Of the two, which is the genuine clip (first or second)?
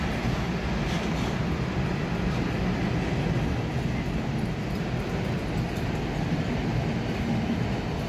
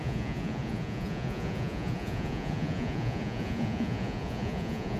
first